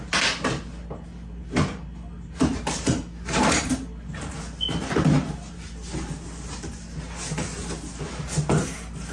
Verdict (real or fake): real